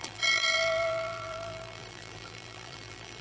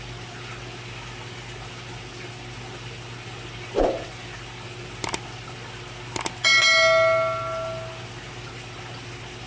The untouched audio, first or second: second